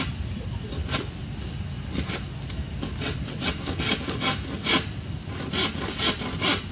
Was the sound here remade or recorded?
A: recorded